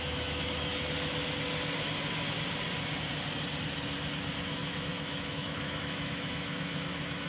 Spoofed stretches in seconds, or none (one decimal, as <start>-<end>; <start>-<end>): 0.0-0.7; 4.4-7.3